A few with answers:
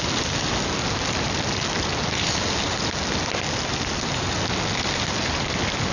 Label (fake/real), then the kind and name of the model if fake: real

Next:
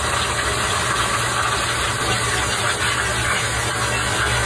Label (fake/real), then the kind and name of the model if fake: real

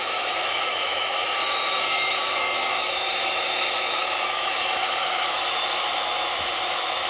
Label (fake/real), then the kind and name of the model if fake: fake, autoencoder, DAC-VAE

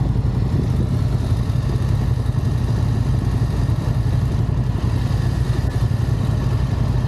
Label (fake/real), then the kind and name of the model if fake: real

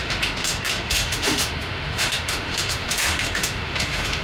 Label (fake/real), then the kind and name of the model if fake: fake, autoencoder, DAC-VAE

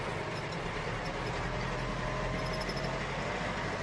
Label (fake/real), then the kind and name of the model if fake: real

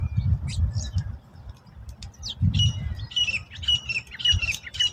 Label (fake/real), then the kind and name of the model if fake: real